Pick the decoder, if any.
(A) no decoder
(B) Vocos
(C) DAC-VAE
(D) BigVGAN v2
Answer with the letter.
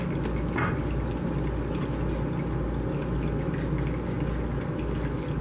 A